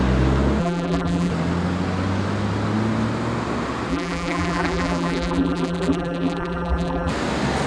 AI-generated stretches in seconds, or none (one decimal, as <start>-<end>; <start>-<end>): 0.6-1.3; 3.9-7.1